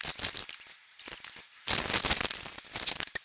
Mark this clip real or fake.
real